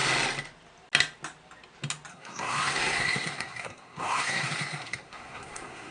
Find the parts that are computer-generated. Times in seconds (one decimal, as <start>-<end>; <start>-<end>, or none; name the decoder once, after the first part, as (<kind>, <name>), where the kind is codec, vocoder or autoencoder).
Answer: 2.1-5.9 (codec, SNAC)